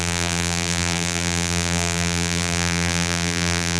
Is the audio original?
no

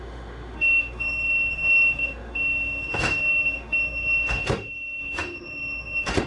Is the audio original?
no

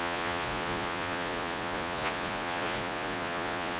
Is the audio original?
no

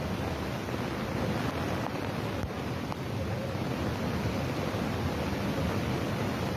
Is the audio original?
yes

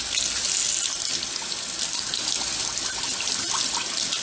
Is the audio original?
yes